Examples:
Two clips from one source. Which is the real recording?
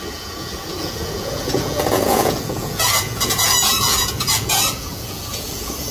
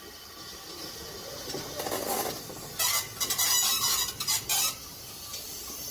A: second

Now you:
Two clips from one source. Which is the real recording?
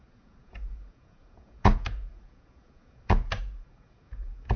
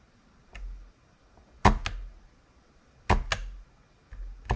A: second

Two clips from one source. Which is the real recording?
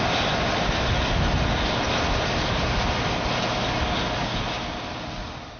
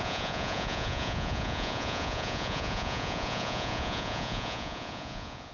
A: first